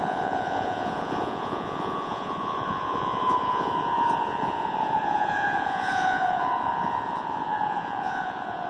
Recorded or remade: remade